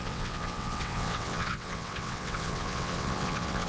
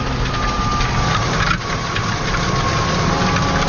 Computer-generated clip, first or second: first